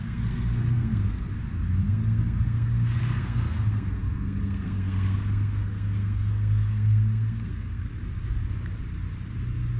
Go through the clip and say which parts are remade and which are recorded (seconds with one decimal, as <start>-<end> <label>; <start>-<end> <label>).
0.0-1.3 remade; 1.3-1.8 recorded; 1.8-7.9 remade; 7.9-9.8 recorded